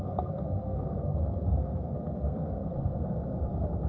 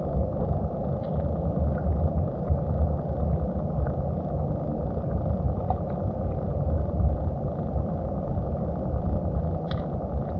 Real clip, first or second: second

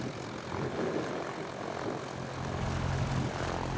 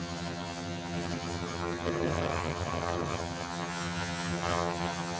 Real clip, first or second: first